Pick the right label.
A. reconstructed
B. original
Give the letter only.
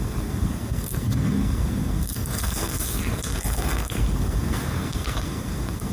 A